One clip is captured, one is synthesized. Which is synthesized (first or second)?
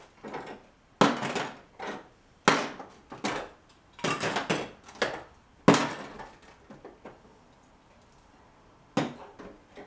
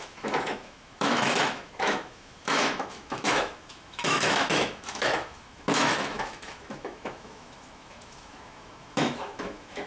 second